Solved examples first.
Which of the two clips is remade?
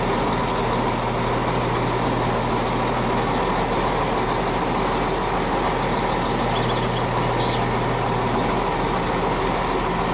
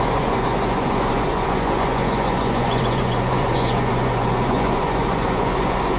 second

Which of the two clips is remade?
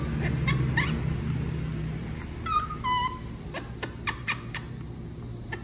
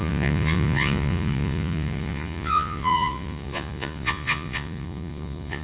second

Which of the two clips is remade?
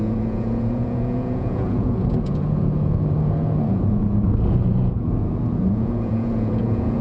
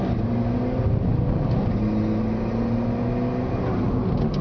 first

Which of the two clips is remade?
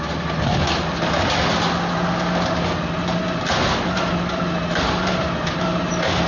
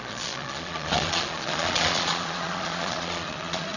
second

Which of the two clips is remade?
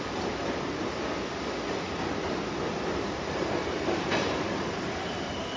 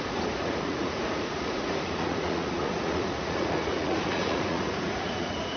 second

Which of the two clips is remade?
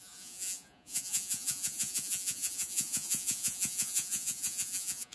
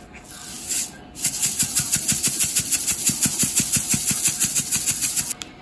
first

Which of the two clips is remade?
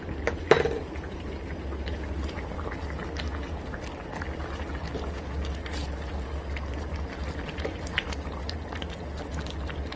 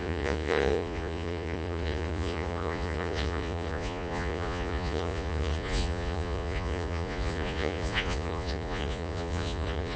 second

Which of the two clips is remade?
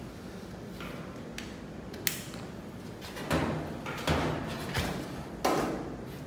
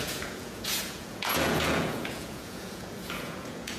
second